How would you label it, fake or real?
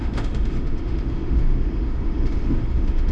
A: fake